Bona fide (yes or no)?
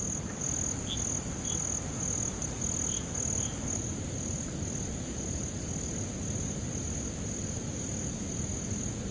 yes